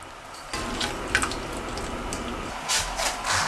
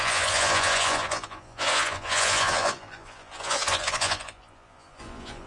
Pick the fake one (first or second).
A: second